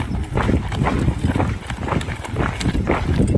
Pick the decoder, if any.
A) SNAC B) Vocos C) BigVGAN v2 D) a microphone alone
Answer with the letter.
D